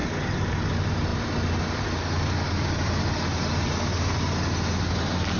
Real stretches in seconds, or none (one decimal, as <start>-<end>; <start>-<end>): 0.0-5.4